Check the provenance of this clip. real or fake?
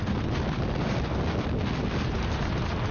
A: real